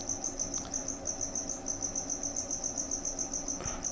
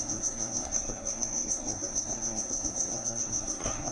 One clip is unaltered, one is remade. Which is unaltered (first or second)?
first